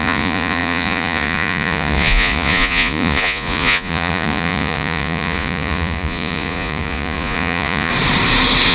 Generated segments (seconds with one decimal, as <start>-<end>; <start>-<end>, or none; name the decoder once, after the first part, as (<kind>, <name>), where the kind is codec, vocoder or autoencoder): 0.0-7.9 (vocoder, Vocos)